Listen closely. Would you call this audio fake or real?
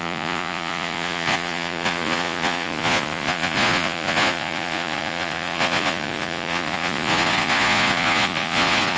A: fake